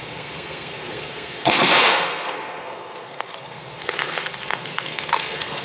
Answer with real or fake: fake